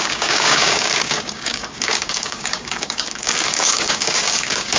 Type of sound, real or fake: fake